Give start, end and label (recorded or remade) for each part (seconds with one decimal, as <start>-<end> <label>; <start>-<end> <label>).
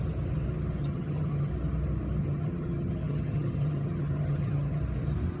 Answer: 0.0-0.8 recorded; 0.8-1.5 remade; 1.5-2.2 recorded; 2.2-4.8 remade; 4.8-5.4 recorded